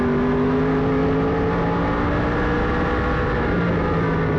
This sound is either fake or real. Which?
real